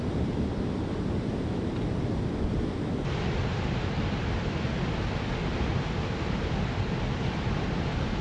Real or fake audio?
real